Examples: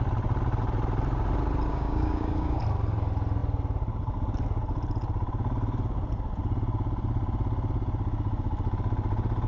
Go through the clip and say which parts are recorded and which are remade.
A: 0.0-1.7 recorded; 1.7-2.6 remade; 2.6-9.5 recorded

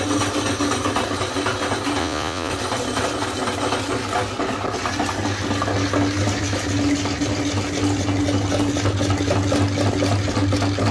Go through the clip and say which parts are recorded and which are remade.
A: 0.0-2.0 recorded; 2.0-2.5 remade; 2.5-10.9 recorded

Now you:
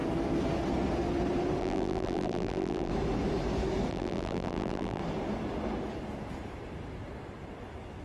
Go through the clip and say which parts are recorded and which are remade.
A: 0.0-1.6 recorded; 1.6-2.9 remade; 2.9-3.9 recorded; 3.9-5.0 remade; 5.0-8.0 recorded

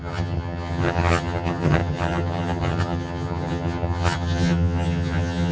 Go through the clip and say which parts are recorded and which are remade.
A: 0.0-5.5 remade

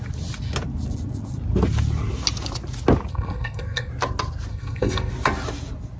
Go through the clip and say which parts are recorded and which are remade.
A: 0.0-3.1 recorded; 3.1-3.9 remade; 3.9-4.5 recorded; 4.5-5.1 remade; 5.1-6.0 recorded

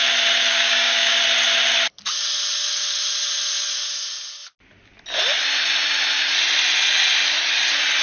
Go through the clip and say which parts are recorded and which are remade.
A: 0.0-0.5 recorded; 0.5-1.2 remade; 1.2-8.0 recorded

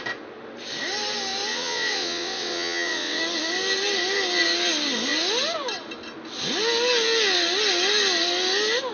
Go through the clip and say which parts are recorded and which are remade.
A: 0.0-1.5 recorded; 1.5-3.2 remade; 3.2-8.9 recorded

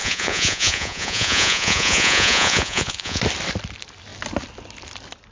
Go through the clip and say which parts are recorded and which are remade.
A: 0.0-3.2 remade; 3.2-5.3 recorded